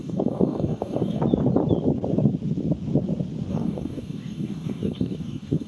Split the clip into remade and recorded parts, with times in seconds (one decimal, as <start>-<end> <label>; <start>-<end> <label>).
0.0-1.2 remade; 1.2-3.5 recorded; 3.5-5.7 remade